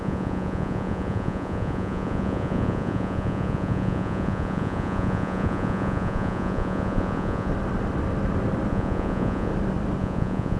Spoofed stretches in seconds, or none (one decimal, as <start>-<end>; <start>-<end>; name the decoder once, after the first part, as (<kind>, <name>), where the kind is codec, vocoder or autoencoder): 0.0-7.5 (vocoder, Vocos); 8.7-9.5; 10.0-10.6